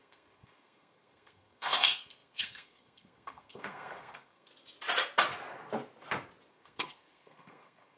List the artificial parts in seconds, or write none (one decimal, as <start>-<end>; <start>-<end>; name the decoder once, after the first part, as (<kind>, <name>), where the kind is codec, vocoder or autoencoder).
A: 0.0-4.5 (codec, SNAC); 6.5-8.0